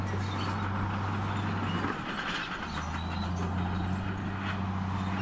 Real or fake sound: real